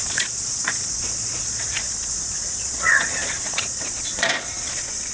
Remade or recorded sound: remade